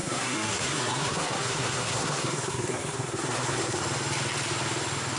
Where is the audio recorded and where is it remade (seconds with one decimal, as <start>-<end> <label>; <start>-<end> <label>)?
0.0-3.8 remade; 3.8-5.2 recorded